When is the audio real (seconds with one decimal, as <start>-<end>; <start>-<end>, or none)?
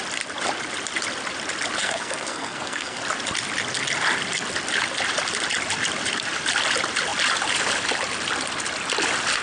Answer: 0.0-1.8; 3.0-9.4